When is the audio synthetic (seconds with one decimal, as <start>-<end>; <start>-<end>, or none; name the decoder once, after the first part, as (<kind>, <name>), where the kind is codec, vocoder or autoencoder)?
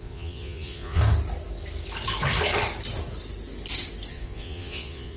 0.0-1.0 (vocoder, Vocos); 4.1-5.2